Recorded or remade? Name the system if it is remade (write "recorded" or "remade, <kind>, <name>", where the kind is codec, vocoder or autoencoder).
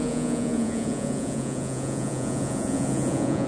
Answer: remade, vocoder, Vocos